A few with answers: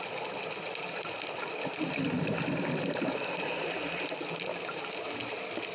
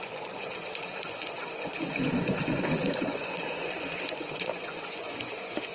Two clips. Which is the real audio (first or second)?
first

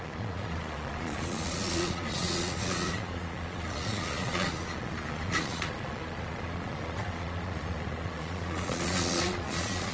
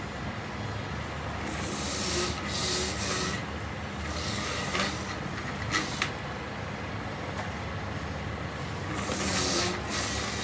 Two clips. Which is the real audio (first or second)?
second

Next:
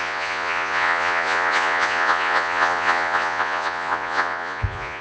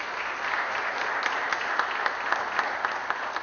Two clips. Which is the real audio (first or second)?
second